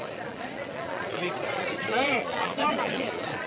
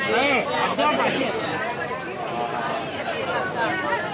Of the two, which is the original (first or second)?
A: second